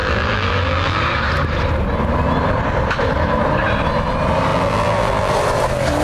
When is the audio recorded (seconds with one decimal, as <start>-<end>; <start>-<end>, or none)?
1.0-4.5; 5.3-6.0